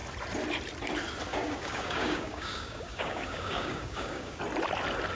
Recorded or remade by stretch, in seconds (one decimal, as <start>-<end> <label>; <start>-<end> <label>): 0.0-1.3 recorded; 1.3-4.4 remade; 4.4-5.2 recorded